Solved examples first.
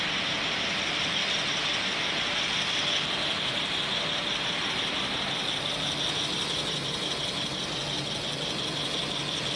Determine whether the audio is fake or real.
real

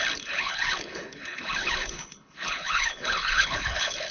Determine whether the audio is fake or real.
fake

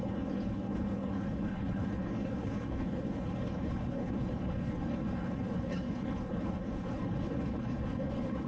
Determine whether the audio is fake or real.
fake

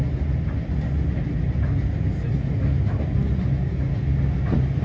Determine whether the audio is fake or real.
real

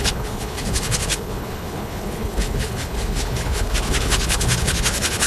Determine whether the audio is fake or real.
fake